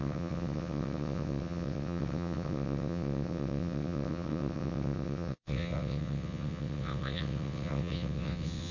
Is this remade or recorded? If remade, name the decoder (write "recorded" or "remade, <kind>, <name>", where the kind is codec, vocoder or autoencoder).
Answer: remade, vocoder, WaveNeXt